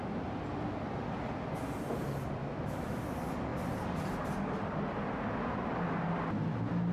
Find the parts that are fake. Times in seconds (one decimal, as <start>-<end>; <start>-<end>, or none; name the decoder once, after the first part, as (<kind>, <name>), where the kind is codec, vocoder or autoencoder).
2.4-3.0 (autoencoder, DAC-VAE)